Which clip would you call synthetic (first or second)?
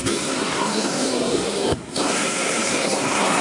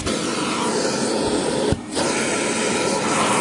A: first